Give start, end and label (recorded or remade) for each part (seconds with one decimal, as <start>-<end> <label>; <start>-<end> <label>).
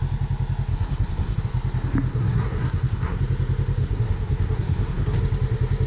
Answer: 0.0-0.7 recorded; 0.7-1.4 remade; 1.4-2.1 recorded; 2.1-3.2 remade; 3.2-3.8 recorded; 3.8-5.2 remade; 5.2-5.9 recorded